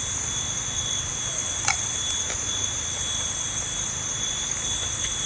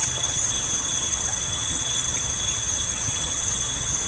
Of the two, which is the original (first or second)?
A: first